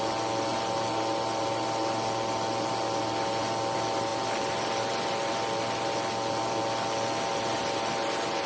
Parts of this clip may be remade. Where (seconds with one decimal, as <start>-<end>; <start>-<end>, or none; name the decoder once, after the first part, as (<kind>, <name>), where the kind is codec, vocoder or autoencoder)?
none